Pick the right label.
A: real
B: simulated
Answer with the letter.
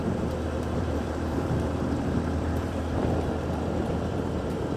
B